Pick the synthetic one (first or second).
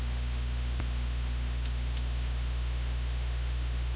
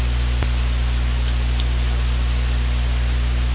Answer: first